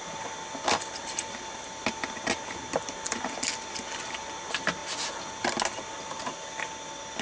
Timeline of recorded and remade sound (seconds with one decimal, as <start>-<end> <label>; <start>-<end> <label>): 0.0-7.2 recorded